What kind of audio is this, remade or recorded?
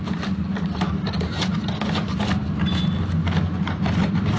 recorded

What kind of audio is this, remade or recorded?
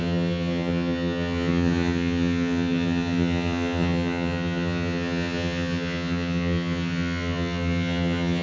remade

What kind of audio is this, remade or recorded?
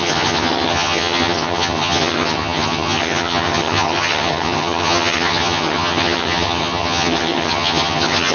remade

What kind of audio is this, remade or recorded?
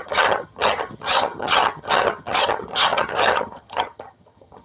remade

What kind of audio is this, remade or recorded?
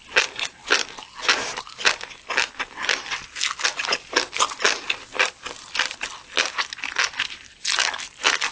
recorded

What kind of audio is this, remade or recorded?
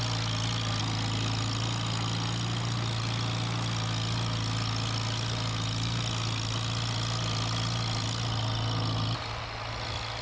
recorded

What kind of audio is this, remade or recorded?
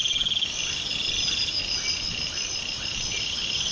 recorded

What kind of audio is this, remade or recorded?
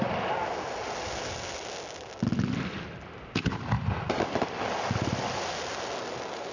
recorded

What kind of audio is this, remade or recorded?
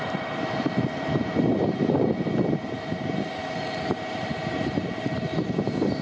recorded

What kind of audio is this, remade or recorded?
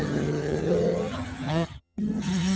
remade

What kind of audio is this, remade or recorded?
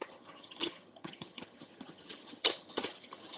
remade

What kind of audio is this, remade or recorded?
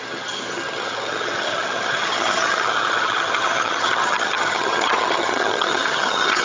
remade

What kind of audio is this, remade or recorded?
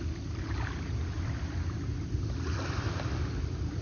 recorded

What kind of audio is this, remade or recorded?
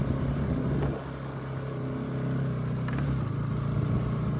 recorded